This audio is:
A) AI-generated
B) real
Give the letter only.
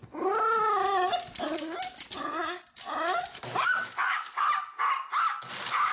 B